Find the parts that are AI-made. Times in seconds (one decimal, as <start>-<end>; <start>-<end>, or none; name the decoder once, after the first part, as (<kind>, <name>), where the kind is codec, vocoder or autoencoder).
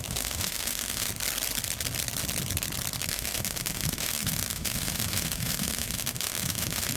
0.0-1.1 (autoencoder, DAC-VAE); 3.0-7.0